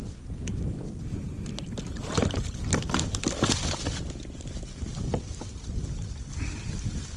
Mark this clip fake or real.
real